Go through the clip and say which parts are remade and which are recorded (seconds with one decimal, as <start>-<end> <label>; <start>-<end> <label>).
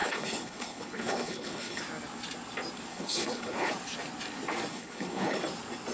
0.0-1.8 remade; 1.8-2.9 recorded; 2.9-3.7 remade; 3.7-4.7 recorded; 4.7-5.4 remade; 5.4-5.9 recorded